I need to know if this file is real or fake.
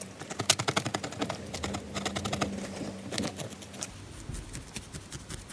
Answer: real